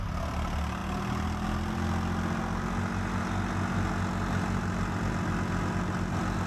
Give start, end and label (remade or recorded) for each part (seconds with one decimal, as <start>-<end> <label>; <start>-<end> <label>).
0.0-6.5 recorded